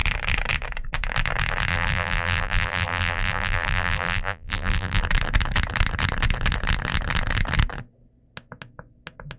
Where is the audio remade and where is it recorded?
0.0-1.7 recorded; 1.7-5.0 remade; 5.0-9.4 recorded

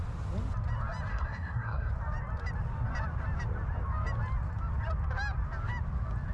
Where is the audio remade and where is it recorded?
0.0-1.1 recorded; 1.1-1.9 remade; 1.9-6.3 recorded